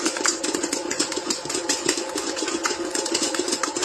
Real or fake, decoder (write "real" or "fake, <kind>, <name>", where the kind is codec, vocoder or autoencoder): fake, vocoder, Vocos